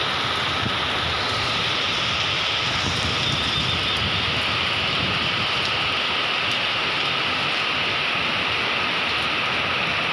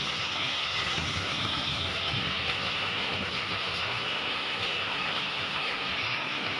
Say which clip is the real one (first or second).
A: first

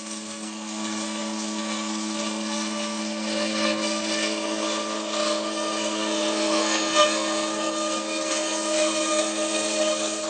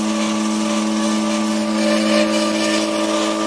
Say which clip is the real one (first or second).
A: second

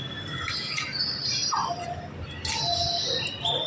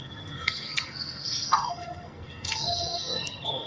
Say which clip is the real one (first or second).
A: first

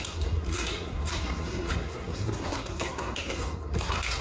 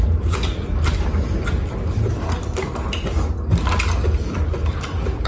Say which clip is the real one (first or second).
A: second